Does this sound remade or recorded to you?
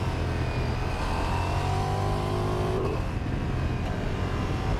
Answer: recorded